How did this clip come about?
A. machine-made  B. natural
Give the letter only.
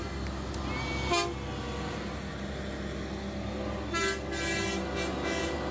B